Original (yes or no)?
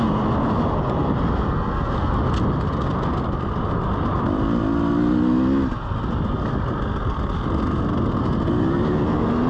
yes